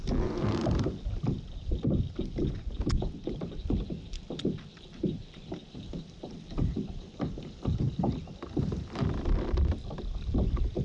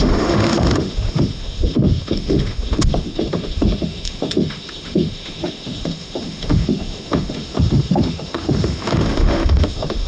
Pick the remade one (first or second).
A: second